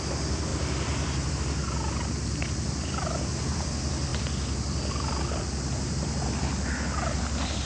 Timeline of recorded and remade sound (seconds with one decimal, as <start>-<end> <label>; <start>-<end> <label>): 0.0-7.7 recorded